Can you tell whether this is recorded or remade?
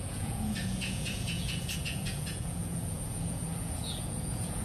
remade